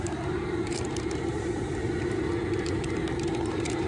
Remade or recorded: remade